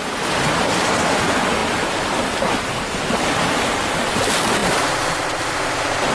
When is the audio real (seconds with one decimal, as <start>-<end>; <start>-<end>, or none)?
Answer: 0.0-6.1